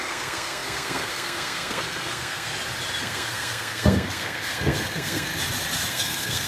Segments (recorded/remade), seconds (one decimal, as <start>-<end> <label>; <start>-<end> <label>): 0.0-2.5 remade; 2.5-3.0 recorded; 3.0-5.3 remade; 5.3-5.9 recorded; 5.9-6.5 remade